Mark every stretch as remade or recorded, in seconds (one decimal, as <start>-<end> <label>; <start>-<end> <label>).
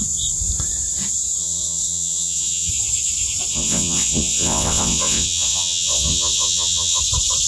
0.0-1.4 recorded; 1.4-2.7 remade; 2.7-3.5 recorded; 3.5-7.0 remade; 7.0-7.5 recorded